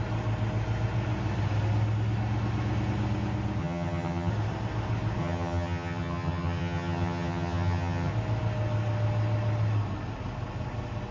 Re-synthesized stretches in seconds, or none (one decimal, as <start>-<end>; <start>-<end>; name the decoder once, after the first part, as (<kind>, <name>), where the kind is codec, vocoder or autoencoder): 3.6-4.3 (vocoder, HiFi-GAN); 5.2-8.1